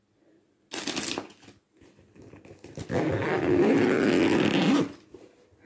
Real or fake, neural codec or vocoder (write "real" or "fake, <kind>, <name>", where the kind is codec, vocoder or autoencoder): real